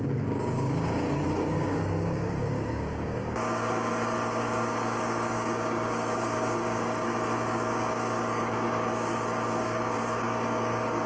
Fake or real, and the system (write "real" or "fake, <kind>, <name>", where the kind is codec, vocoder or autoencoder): fake, codec, DAC